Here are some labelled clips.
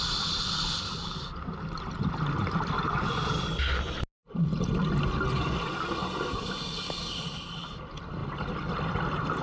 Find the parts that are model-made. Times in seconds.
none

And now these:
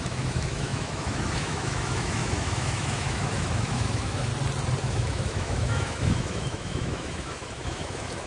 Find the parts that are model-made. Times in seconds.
0.0-4.3 (autoencoder, DAC-VAE); 4.8-8.3

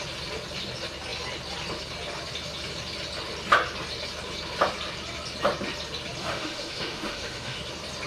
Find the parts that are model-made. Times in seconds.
6.2-7.6 (autoencoder, DAC-VAE)